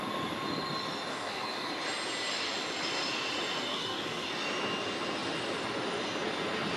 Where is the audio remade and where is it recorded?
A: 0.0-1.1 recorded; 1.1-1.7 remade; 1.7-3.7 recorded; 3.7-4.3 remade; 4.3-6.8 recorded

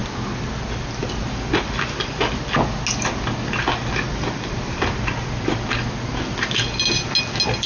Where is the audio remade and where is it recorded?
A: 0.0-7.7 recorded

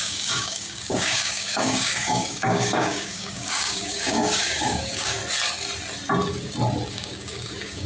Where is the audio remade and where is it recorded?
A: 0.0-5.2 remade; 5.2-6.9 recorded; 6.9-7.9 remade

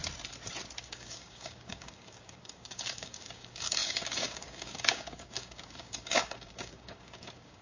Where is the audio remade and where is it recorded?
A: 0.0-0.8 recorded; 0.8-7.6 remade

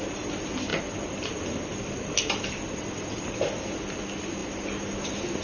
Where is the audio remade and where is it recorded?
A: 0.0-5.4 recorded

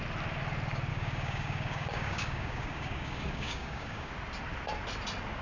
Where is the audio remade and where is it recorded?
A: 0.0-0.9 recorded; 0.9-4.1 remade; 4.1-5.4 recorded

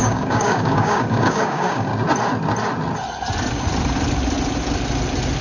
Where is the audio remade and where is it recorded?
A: 0.0-1.9 remade; 1.9-5.4 recorded

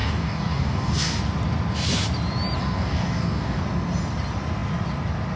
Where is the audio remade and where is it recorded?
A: 0.0-1.2 remade; 1.2-2.6 recorded; 2.6-3.6 remade; 3.6-5.4 recorded